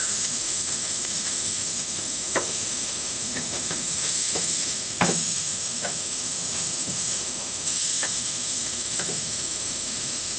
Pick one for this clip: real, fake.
fake